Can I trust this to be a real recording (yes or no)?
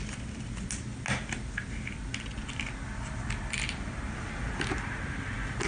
yes